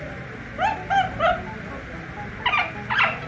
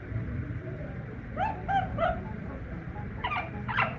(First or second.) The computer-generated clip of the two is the second